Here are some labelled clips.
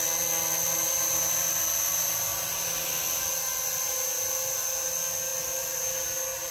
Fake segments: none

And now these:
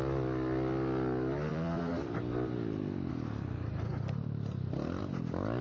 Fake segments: 1.5-3.1 (vocoder, BigVGAN v2); 3.9-5.0

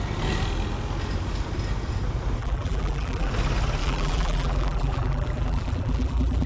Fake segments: 2.4-3.3 (vocoder, BigVGAN v2); 3.8-6.5